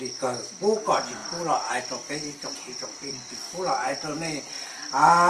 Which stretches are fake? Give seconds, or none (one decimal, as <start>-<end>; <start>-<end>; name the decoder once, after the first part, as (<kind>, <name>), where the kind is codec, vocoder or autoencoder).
none